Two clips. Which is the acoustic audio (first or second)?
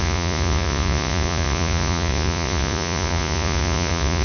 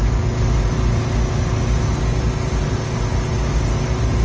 second